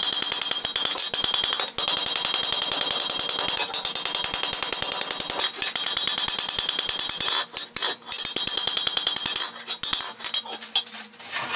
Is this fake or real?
real